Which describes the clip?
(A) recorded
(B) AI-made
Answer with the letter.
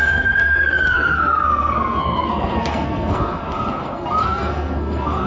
B